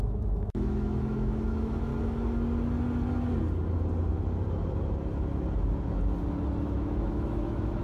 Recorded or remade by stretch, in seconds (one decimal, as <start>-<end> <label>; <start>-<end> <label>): 0.0-1.9 remade; 1.9-6.6 recorded; 6.6-7.8 remade